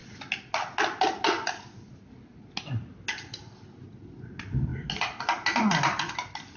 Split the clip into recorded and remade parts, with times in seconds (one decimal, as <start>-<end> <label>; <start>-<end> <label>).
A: 0.0-6.6 recorded